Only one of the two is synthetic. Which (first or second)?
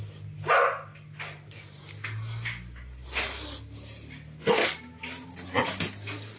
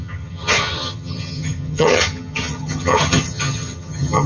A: second